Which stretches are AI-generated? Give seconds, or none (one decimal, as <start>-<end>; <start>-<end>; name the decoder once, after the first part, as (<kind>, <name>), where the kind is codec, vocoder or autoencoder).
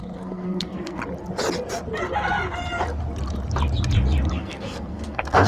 0.0-1.0 (codec, SNAC); 4.3-5.5